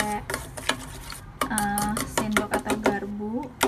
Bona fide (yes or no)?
yes